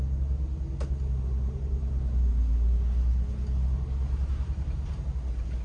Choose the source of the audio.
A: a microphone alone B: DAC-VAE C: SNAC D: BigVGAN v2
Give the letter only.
A